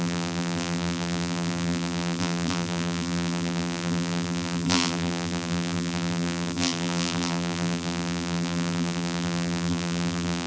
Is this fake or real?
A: fake